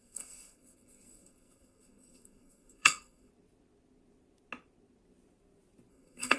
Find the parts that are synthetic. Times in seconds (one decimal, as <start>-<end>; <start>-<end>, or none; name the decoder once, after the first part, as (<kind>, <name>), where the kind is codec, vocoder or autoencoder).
0.0-3.3 (codec, SNAC); 5.9-6.4